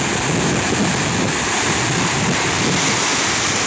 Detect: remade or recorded recorded